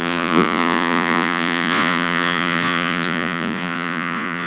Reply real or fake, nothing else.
fake